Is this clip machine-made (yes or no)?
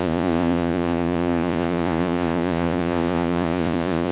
yes